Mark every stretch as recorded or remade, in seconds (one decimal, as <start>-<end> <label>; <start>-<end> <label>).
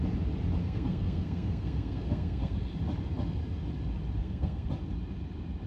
0.0-0.6 recorded; 0.6-2.7 remade; 2.7-4.2 recorded; 4.2-4.7 remade; 4.7-5.7 recorded